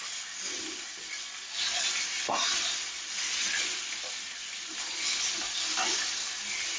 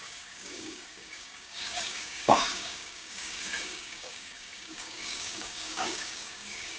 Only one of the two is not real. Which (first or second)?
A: second